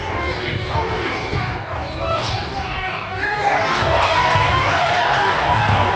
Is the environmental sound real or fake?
fake